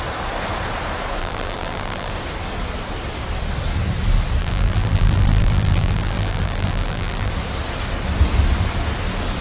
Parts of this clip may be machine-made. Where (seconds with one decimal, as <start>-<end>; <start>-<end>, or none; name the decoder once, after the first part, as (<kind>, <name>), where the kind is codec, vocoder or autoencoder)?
1.2-2.1 (vocoder, BigVGAN v2); 4.4-7.3